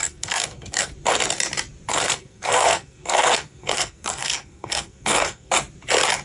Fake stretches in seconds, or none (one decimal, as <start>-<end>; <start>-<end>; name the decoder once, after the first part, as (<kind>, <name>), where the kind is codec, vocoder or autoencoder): 0.0-0.9 (codec, SNAC); 1.9-5.5